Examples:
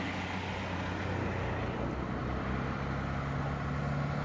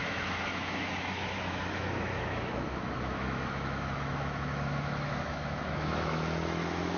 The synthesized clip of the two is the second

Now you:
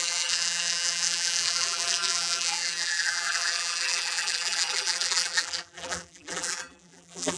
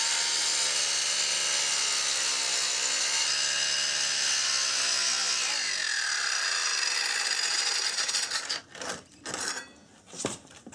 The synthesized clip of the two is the first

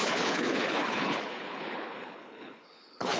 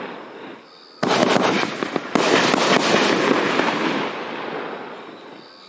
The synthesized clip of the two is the first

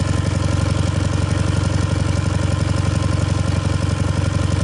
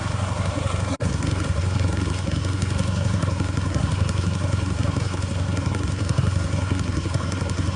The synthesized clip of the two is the second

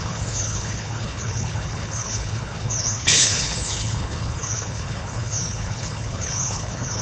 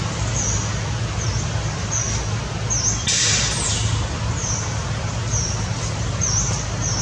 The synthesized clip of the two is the first